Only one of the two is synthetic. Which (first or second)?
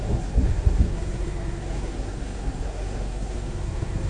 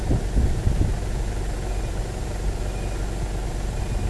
first